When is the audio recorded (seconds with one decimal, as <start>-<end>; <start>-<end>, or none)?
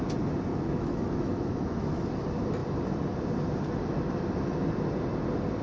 0.0-0.5; 2.1-5.6